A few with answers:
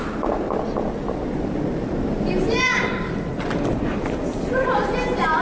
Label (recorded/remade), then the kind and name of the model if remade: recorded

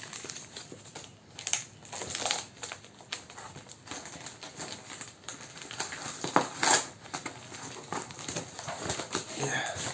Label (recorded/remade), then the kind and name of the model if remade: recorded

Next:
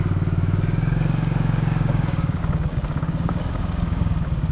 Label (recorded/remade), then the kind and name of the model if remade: remade, codec, DAC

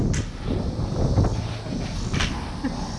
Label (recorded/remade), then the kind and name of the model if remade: recorded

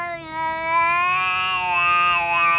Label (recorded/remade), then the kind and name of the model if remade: recorded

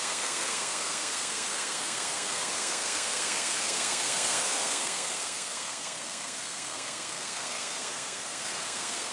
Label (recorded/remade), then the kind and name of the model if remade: remade, codec, SNAC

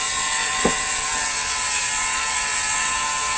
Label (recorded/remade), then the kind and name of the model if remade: remade, vocoder, WaveNeXt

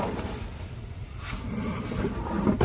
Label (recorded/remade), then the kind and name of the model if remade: recorded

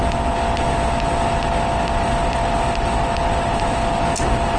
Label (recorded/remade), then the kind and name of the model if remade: recorded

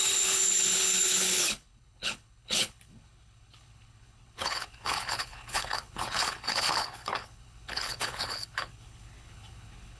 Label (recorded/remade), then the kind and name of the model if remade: remade, codec, HILCodec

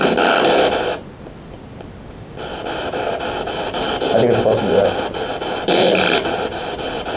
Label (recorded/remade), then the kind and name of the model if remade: recorded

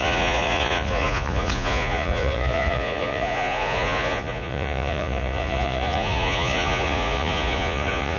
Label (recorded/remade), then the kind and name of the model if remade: remade, vocoder, Vocos